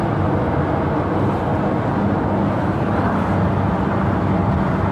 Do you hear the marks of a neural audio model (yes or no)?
no